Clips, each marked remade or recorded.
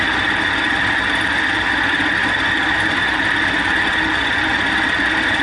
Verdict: recorded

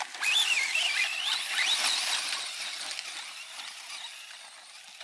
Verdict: recorded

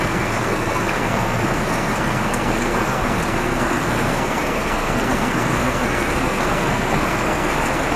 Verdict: remade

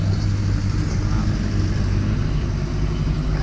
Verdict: recorded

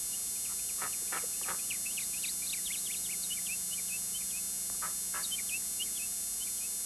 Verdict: recorded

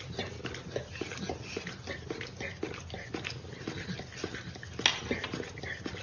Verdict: recorded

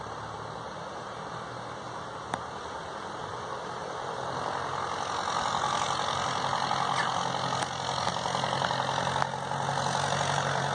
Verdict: recorded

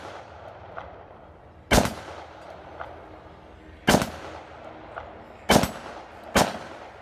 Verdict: recorded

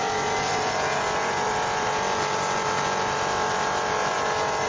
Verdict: recorded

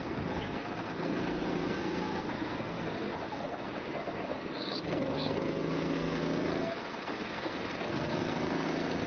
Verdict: remade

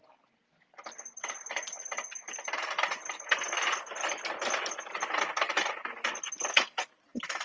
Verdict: recorded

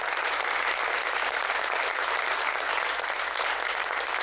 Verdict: recorded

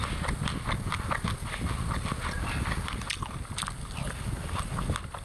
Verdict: recorded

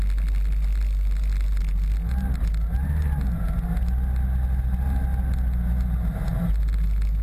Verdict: recorded